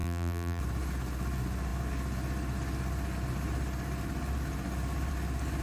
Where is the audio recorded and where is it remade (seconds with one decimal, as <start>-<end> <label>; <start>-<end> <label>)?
0.0-0.6 remade; 0.6-5.6 recorded